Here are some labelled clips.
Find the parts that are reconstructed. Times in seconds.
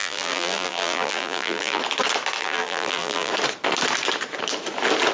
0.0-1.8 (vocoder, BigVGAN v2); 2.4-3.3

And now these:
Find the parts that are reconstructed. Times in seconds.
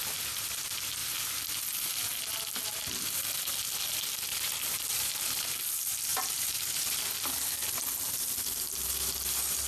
4.3-5.6 (vocoder, BigVGAN v2); 6.1-7.0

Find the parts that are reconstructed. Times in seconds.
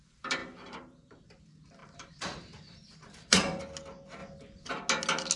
0.4-1.4 (vocoder, BigVGAN v2); 1.8-3.6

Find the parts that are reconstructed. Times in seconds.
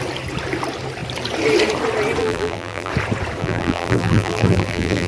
2.2-2.9 (vocoder, BigVGAN v2); 3.4-5.1